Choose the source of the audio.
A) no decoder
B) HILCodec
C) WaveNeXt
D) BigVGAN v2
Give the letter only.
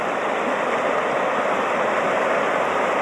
A